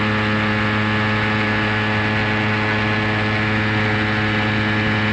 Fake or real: real